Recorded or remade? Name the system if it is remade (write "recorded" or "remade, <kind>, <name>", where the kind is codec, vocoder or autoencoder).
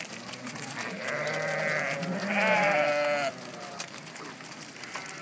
recorded